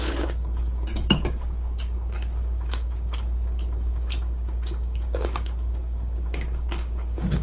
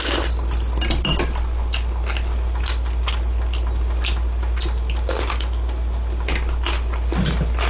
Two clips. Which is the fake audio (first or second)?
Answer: first